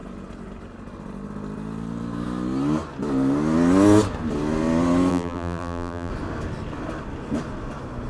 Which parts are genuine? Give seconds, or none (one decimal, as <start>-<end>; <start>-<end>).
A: 0.0-5.1; 6.1-8.1